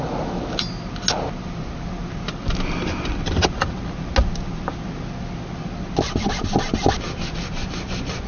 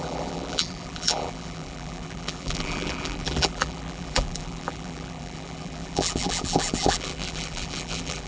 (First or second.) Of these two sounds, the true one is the first